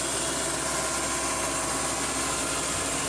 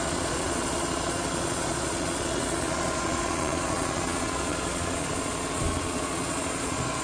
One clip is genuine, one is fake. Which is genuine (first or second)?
first